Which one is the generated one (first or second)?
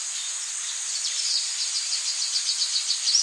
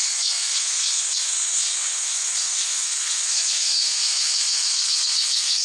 second